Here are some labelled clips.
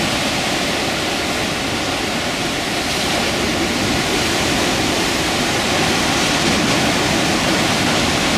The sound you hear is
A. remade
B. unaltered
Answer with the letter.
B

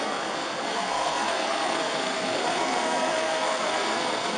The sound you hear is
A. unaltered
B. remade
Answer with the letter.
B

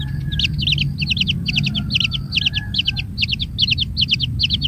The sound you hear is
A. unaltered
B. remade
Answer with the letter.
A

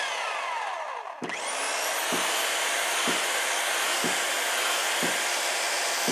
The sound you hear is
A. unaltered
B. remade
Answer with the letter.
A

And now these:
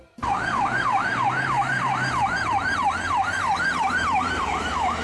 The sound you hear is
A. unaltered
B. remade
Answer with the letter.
B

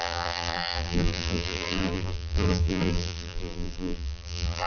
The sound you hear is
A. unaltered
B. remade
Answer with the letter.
B